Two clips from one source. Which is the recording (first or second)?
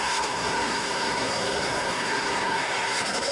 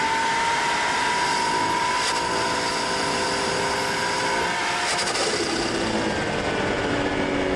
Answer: second